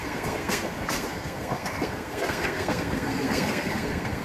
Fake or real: fake